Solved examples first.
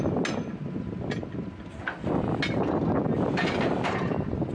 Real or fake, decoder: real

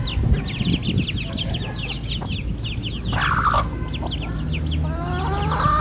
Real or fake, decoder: real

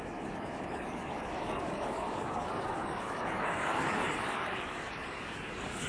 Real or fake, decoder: fake, codec, DAC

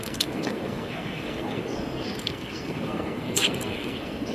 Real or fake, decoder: fake, codec, SNAC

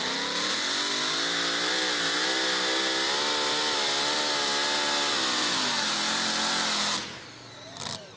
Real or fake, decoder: real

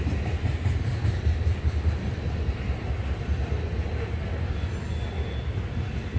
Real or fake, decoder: real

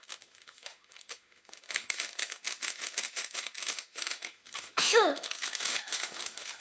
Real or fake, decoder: fake, autoencoder, DAC-VAE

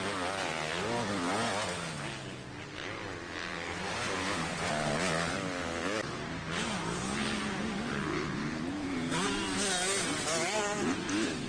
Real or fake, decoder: real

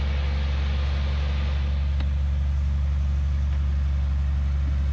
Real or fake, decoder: real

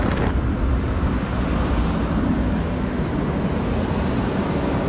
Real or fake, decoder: real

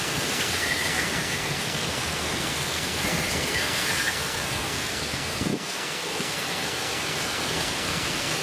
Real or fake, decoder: fake, codec, SNAC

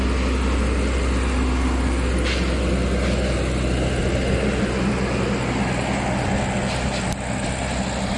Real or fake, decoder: real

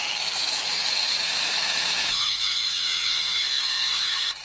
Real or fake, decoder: fake, autoencoder, DAC-VAE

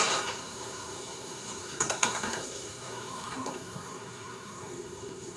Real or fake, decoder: fake, codec, SNAC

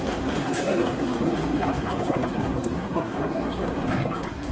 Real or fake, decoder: fake, codec, SNAC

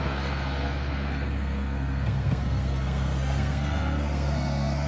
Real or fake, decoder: fake, codec, SNAC